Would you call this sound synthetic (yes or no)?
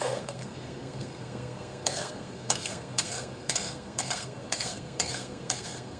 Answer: yes